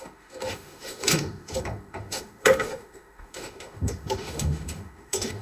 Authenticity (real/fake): fake